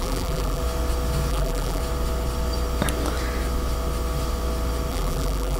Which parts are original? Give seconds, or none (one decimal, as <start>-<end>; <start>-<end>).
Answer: 0.6-1.3; 1.8-4.9